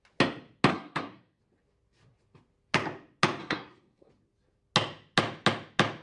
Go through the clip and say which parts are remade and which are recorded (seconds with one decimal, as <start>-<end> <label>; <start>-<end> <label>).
0.0-0.7 recorded; 0.7-1.4 remade; 1.4-3.4 recorded; 3.4-4.1 remade; 4.1-6.0 recorded